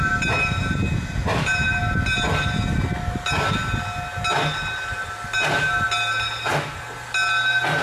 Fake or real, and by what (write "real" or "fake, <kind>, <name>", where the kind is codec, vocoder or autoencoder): real